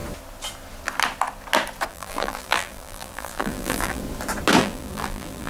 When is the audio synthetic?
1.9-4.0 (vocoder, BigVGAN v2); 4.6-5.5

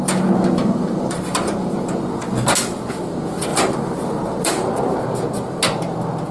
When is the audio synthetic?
0.6-1.3 (vocoder, BigVGAN v2); 3.5-4.8

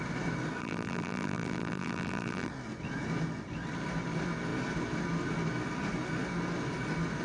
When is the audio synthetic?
0.6-2.5 (vocoder, BigVGAN v2)

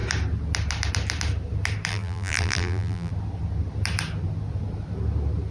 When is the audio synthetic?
1.9-3.1 (vocoder, BigVGAN v2)

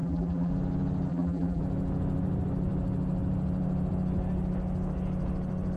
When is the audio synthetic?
0.0-0.5 (vocoder, BigVGAN v2); 1.1-1.6